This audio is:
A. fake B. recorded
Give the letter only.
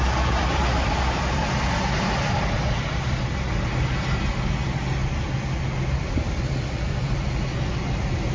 B